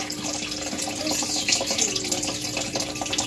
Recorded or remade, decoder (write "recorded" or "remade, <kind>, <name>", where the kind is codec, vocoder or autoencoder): recorded